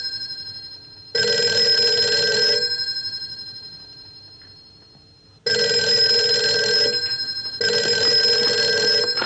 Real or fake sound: real